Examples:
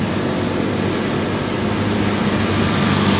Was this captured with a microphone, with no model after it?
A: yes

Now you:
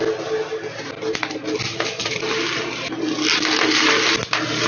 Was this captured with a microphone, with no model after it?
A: yes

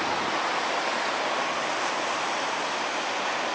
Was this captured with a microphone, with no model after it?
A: yes